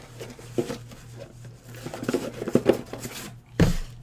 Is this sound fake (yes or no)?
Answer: no